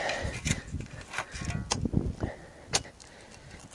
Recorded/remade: recorded